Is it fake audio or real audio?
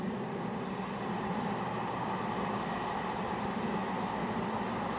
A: real